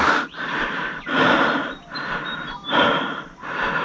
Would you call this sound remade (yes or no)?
no